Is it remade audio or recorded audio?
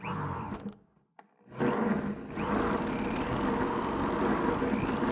recorded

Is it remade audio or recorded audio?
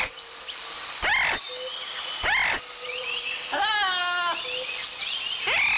recorded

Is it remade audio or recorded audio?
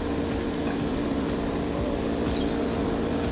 recorded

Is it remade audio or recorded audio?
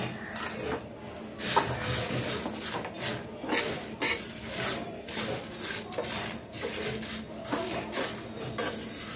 recorded